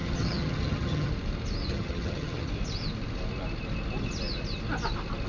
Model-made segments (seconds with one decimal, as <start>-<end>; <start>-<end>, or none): 0.0-1.1; 1.7-2.5